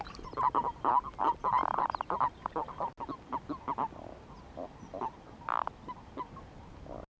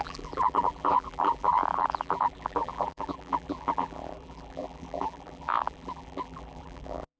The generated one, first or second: second